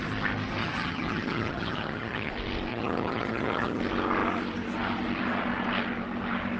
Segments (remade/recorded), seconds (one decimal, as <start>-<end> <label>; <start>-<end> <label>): 0.0-0.6 recorded; 0.6-2.3 remade; 2.3-2.7 recorded; 2.7-3.8 remade; 3.8-6.6 recorded